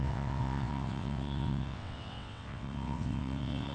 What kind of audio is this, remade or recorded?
remade